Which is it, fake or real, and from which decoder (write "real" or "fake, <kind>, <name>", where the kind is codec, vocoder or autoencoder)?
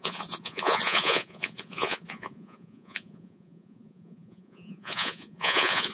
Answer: fake, vocoder, Vocos